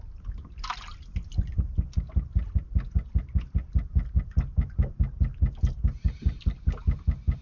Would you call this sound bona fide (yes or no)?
yes